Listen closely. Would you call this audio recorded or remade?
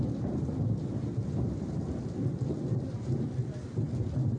recorded